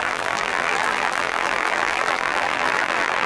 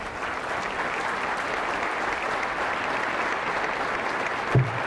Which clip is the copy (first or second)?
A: first